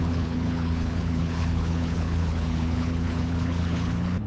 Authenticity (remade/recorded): remade